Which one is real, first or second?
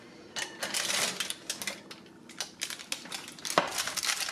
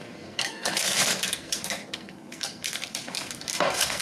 first